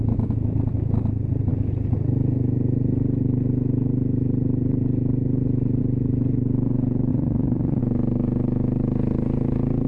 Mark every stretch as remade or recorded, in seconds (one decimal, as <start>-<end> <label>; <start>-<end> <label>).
0.0-7.1 recorded; 7.1-7.8 remade; 7.8-9.9 recorded